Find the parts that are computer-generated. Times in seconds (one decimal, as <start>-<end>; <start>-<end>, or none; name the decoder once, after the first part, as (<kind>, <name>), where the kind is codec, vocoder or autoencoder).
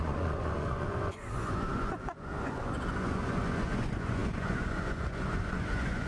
0.0-6.1 (vocoder, Vocos)